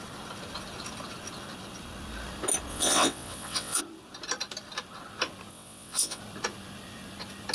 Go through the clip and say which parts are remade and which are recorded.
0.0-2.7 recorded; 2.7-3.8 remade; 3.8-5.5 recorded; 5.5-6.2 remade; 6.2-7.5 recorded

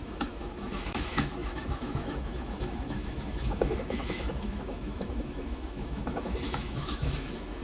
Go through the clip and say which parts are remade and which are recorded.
0.0-7.6 remade

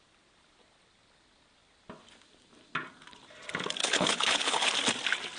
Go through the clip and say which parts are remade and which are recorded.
0.0-3.8 recorded; 3.8-4.7 remade; 4.7-5.4 recorded

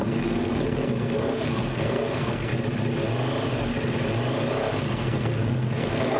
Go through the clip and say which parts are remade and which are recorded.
0.0-2.5 remade; 2.5-4.8 recorded; 4.8-6.2 remade

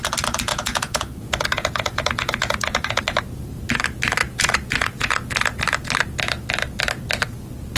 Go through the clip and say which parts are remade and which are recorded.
0.0-0.5 recorded; 0.5-3.0 remade; 3.0-4.2 recorded; 4.2-5.6 remade; 5.6-7.8 recorded

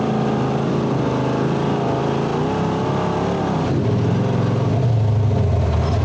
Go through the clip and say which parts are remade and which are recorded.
0.0-6.0 recorded

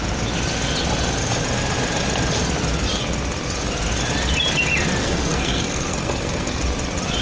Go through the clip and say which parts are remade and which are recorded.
0.0-5.0 recorded; 5.0-6.6 remade; 6.6-7.2 recorded